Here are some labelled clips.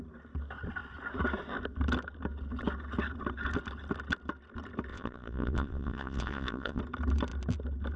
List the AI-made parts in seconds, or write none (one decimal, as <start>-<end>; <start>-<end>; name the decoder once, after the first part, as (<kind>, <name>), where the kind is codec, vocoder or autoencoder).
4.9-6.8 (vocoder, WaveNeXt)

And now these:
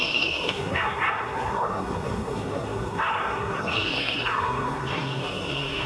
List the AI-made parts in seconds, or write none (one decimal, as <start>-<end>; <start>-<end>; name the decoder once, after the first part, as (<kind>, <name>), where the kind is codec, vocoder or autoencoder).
0.0-5.9 (codec, SNAC)

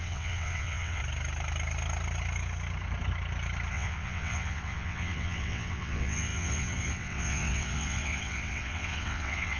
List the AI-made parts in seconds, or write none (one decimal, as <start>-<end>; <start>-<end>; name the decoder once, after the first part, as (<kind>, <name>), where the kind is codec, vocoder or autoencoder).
0.0-1.0 (vocoder, WaveNeXt); 3.7-9.6

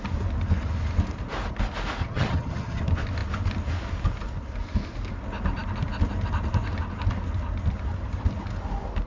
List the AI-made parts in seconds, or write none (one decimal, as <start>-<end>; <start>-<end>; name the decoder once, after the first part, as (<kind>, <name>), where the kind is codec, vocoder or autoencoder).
2.0-2.8 (vocoder, HiFi-GAN)

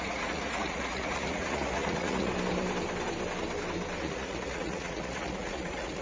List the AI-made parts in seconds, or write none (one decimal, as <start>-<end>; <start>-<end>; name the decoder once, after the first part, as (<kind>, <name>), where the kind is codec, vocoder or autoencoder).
0.0-2.3 (vocoder, Vocos); 4.0-6.0